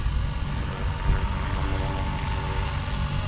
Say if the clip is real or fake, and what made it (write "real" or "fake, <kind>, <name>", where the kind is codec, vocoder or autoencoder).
real